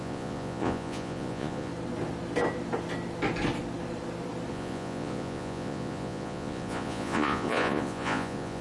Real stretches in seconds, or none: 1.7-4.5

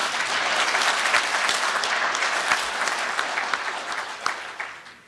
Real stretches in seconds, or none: 0.0-5.1

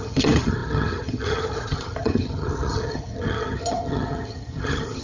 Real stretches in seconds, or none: none

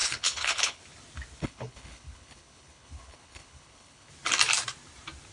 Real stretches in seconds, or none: 0.8-1.4; 4.1-5.3

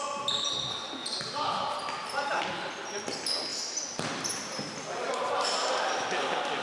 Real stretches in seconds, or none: 0.0-1.0; 1.8-6.6